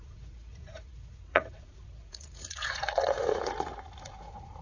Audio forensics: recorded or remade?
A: remade